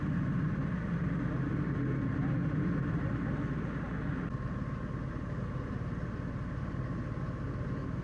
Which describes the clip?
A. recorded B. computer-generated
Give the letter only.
A